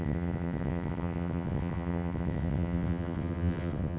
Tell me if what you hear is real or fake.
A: fake